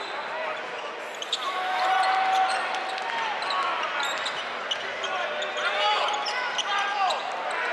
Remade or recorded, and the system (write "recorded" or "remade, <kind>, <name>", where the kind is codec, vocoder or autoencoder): recorded